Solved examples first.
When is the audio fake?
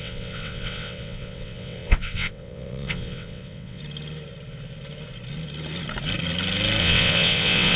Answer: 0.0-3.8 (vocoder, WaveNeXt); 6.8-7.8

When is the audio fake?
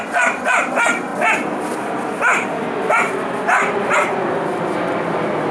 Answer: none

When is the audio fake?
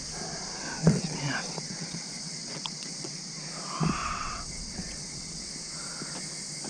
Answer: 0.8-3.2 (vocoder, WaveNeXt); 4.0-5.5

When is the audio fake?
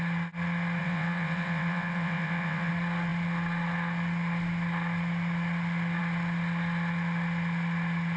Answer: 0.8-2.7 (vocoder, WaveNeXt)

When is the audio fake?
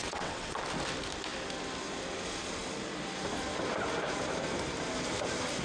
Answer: 0.0-0.6 (vocoder, WaveNeXt)